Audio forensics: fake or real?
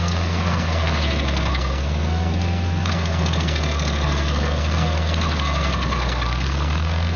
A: fake